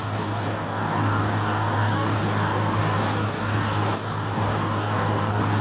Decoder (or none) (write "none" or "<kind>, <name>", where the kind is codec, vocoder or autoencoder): codec, DAC